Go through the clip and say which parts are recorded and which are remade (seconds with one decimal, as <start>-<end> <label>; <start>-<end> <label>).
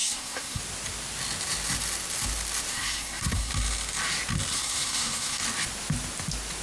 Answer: 0.0-0.6 remade; 0.6-2.7 recorded; 2.7-3.5 remade; 3.5-4.5 recorded; 4.5-5.4 remade; 5.4-6.6 recorded